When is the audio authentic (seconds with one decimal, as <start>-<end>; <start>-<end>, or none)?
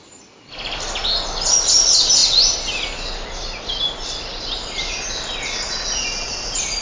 0.0-6.8